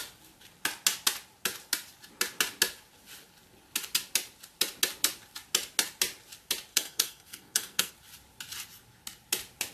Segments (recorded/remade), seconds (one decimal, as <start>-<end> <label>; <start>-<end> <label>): 0.0-6.7 recorded; 6.7-7.9 remade; 7.9-9.7 recorded